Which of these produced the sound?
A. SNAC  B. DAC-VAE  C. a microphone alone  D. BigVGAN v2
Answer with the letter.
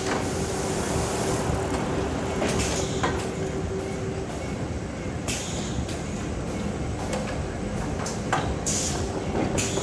C